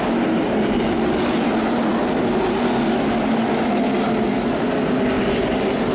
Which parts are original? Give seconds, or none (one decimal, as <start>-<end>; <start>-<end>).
0.0-5.9